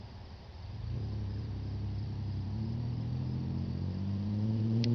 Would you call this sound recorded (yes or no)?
no